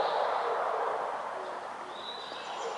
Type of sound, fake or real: real